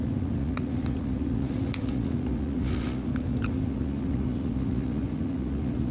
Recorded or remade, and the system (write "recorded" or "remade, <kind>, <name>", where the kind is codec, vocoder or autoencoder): remade, vocoder, Vocos